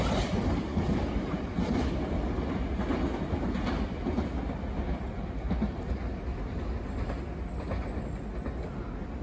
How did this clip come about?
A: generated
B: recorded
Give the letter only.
B